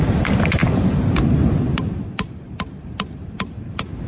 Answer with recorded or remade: remade